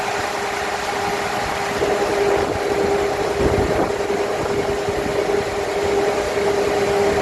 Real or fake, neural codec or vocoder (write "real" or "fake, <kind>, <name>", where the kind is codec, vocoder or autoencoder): real